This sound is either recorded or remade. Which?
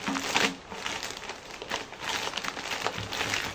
recorded